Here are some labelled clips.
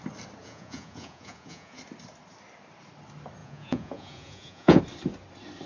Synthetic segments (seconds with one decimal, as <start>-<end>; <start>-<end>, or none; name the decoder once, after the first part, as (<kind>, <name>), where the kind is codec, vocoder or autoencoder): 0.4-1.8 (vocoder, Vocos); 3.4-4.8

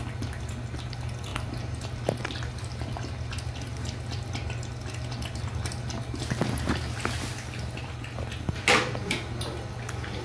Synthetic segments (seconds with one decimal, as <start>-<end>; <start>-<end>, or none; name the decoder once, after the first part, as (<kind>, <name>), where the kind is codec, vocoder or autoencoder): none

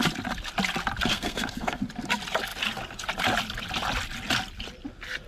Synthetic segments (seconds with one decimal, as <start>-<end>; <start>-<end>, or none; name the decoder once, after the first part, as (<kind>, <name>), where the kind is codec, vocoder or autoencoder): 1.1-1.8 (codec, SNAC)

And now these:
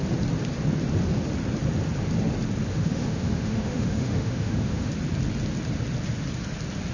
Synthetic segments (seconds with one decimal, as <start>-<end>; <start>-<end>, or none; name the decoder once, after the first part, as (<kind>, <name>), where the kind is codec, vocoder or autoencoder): 2.7-4.9 (autoencoder, DAC-VAE)